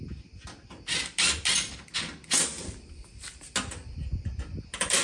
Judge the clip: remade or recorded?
recorded